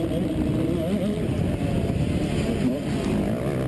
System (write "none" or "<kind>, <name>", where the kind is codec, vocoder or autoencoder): none